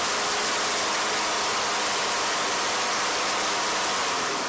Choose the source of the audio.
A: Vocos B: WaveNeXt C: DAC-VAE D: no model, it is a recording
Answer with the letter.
D